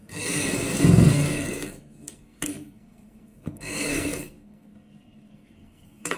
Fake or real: fake